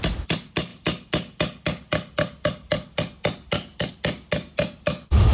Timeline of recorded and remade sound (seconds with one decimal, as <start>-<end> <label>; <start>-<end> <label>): 0.0-5.3 recorded